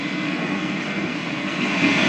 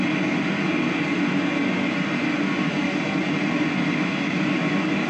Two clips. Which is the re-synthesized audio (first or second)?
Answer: first